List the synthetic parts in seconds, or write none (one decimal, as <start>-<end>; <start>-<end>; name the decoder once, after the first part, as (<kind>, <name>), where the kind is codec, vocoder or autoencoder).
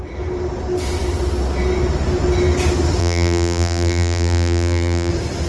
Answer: 3.0-5.1 (vocoder, BigVGAN v2)